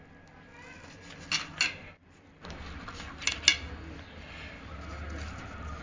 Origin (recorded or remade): recorded